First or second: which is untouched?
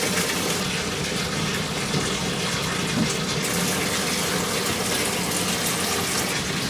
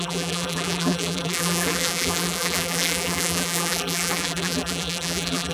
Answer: first